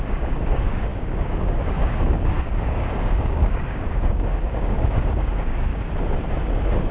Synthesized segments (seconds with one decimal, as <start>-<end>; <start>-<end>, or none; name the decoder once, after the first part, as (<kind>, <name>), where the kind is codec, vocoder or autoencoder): 0.0-5.7 (codec, DAC)